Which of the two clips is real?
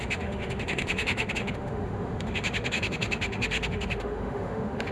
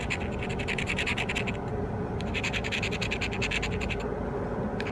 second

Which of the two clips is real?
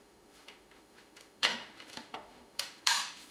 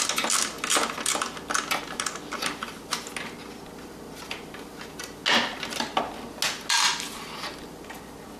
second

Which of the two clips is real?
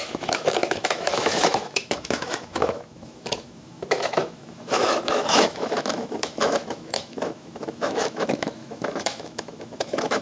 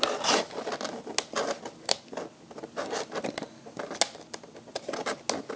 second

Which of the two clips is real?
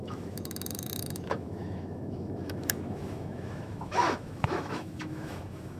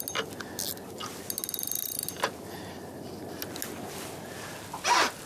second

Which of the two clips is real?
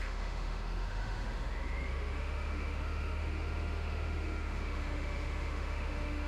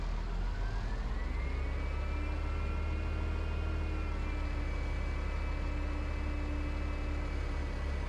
second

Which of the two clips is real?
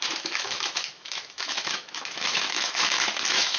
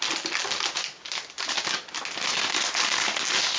second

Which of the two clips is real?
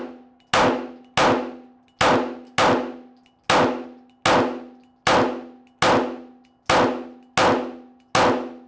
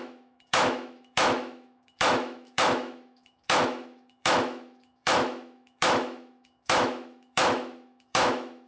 first